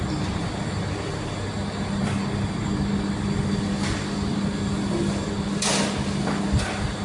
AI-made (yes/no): no